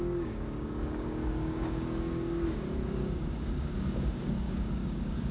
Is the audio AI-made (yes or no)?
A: yes